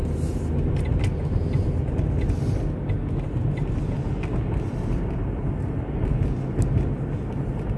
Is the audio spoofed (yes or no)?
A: no